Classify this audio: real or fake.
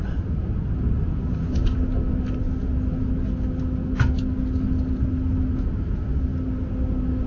real